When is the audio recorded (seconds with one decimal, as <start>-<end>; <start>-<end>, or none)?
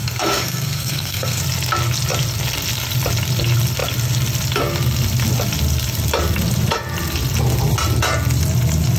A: 1.4-9.0